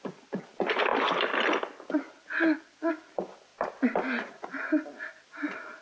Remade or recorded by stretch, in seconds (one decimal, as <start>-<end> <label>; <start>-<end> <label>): 0.0-5.8 recorded